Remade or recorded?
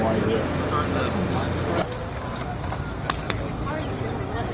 recorded